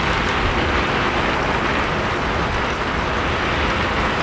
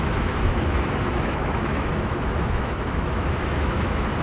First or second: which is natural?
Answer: first